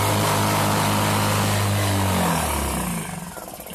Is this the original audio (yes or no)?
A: yes